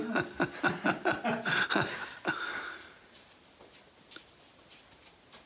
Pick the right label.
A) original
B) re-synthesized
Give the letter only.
A